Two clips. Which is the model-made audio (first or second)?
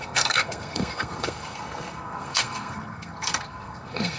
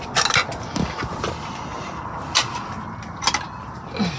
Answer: first